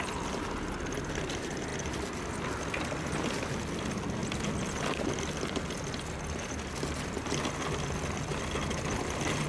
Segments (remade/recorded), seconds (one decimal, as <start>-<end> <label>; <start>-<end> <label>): 0.0-9.5 recorded